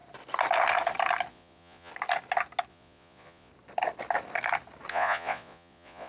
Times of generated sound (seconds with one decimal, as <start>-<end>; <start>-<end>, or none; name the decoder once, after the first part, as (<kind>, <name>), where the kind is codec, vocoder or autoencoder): 1.3-1.9 (vocoder, Vocos); 2.7-3.5; 4.9-6.1